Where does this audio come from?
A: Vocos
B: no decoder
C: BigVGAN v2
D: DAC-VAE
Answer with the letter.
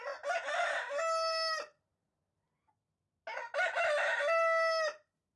B